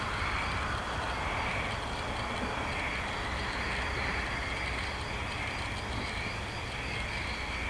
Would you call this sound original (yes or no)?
yes